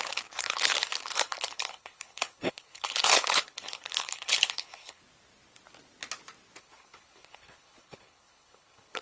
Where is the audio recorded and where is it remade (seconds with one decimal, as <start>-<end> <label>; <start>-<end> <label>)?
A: 0.0-5.0 remade; 5.0-6.6 recorded; 6.6-9.0 remade